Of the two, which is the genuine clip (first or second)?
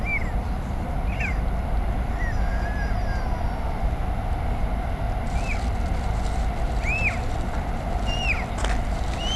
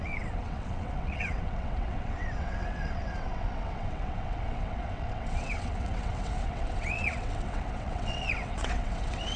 first